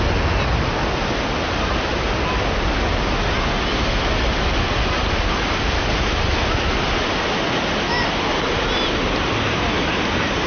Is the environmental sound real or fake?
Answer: real